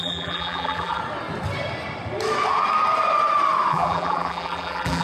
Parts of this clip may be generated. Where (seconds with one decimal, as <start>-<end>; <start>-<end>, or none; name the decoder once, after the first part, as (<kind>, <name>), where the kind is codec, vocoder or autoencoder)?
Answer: 0.0-1.0 (vocoder, BigVGAN v2); 3.7-5.0